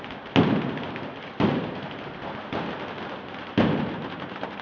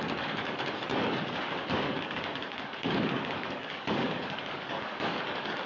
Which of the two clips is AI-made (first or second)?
second